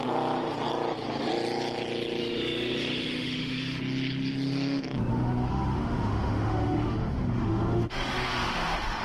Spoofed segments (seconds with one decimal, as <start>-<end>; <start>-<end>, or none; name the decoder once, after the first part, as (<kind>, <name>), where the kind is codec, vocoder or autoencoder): 2.2-3.8 (autoencoder, DAC-VAE); 5.1-9.0